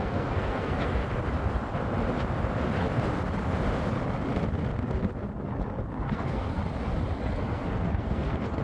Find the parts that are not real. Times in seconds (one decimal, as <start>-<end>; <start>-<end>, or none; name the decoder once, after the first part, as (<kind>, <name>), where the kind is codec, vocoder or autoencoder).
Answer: 0.0-1.0 (codec, SNAC); 6.0-6.6; 7.3-8.6